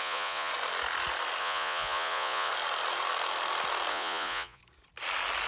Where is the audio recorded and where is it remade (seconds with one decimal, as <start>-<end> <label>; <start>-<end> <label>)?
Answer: 0.0-0.5 remade; 0.5-1.4 recorded; 1.4-2.5 remade; 2.5-3.9 recorded; 3.9-4.6 remade; 4.6-5.5 recorded

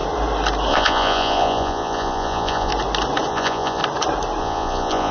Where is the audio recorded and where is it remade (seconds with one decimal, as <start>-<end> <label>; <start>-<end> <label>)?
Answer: 0.0-0.7 recorded; 0.7-2.7 remade; 2.7-3.3 recorded; 3.3-3.8 remade; 3.8-4.4 recorded; 4.4-5.1 remade

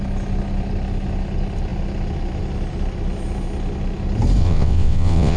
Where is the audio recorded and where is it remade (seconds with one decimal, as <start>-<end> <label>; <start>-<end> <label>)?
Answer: 0.0-4.4 recorded; 4.4-5.4 remade